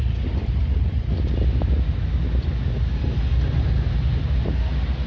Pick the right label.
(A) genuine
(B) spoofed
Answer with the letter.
A